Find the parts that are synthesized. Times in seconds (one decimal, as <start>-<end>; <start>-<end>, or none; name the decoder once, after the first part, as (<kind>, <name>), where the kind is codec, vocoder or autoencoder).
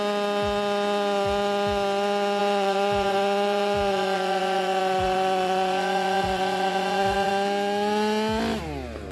2.4-7.3 (vocoder, Vocos)